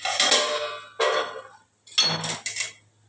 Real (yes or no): yes